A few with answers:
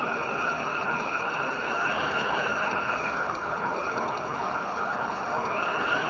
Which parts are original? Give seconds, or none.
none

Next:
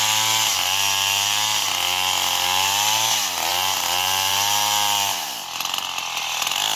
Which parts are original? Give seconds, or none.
0.0-6.8

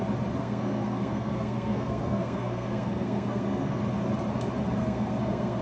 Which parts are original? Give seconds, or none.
0.0-0.4; 3.8-4.8

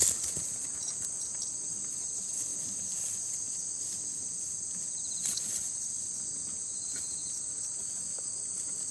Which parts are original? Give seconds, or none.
0.0-8.9